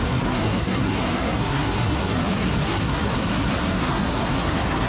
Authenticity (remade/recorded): remade